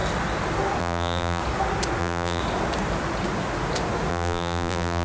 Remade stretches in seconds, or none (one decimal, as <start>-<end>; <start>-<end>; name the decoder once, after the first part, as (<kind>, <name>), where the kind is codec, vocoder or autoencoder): 0.8-1.4 (vocoder, BigVGAN v2); 2.0-2.4; 4.1-5.0